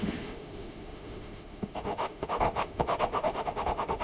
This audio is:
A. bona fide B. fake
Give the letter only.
B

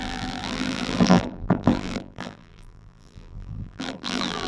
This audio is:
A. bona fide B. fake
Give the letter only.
B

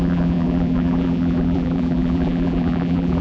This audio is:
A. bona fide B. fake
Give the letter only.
B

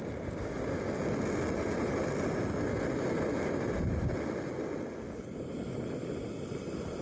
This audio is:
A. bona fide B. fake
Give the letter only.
A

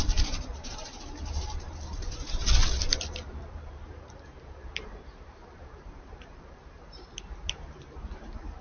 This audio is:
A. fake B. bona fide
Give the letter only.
A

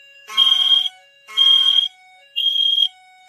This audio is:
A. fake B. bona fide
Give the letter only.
A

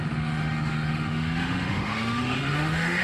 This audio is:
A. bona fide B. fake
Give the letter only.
B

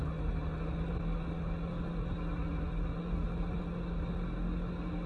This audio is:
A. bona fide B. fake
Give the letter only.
A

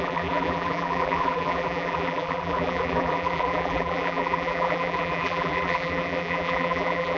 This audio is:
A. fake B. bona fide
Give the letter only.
A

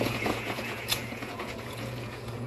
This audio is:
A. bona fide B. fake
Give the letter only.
B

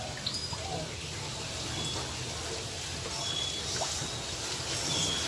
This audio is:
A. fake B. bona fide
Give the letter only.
B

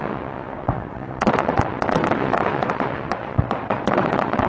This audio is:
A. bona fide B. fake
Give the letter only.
B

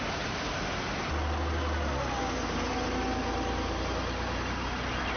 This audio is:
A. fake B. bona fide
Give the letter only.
B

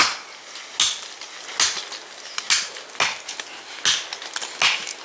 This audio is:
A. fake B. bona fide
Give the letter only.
B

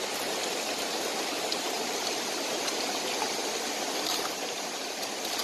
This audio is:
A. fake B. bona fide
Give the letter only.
B